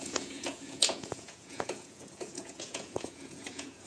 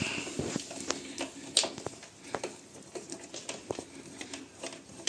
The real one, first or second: second